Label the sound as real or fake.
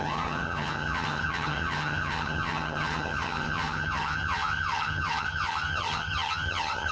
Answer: fake